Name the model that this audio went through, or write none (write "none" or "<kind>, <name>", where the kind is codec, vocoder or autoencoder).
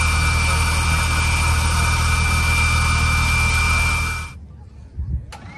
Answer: none